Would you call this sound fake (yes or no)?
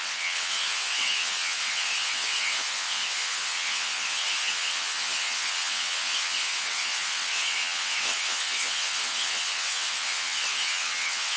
yes